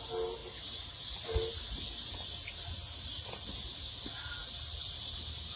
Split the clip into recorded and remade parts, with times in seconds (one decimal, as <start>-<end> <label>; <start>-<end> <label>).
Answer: 0.0-5.6 recorded